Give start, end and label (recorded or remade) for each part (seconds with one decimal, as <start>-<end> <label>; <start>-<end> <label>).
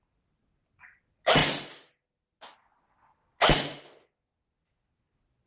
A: 0.0-5.5 recorded